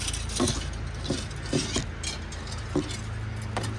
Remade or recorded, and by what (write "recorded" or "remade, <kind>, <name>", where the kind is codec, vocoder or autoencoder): recorded